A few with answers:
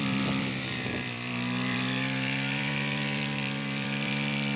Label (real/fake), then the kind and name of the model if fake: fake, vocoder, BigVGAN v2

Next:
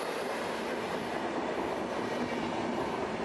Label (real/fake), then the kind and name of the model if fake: real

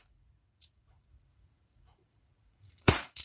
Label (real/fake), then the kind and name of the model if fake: fake, vocoder, Vocos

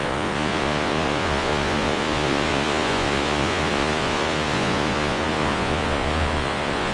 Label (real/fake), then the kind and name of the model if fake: fake, vocoder, Vocos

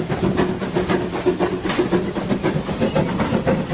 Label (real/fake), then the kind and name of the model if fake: real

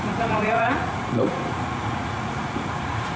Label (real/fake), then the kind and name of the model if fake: fake, vocoder, Vocos